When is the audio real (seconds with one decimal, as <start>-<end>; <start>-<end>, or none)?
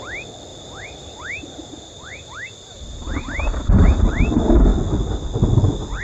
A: 0.0-0.5; 4.0-6.0